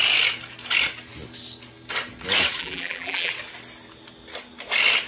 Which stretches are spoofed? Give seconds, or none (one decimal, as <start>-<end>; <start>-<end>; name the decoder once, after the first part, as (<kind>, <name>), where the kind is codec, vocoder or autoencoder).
2.6-3.3 (vocoder, BigVGAN v2)